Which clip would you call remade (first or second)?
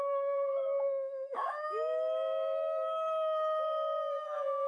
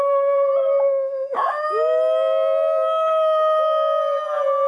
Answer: first